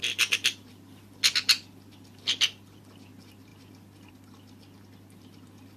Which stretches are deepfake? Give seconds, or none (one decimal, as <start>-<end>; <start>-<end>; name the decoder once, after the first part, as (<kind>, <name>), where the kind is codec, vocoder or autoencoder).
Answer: 0.0-2.8 (vocoder, BigVGAN v2)